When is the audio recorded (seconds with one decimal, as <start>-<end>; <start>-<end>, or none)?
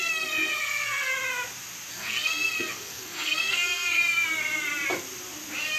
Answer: 1.1-1.9; 4.0-5.8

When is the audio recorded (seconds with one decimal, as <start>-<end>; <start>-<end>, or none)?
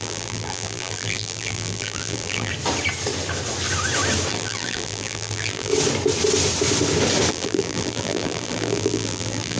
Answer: 2.5-4.3; 5.7-7.3